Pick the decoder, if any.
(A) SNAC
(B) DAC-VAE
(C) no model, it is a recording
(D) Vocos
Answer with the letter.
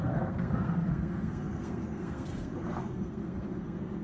A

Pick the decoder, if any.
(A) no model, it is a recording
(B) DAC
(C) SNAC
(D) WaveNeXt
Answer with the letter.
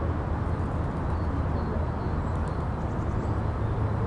A